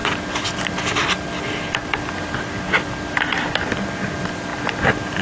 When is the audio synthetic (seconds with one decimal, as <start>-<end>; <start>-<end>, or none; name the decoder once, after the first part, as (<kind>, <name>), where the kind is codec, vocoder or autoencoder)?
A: none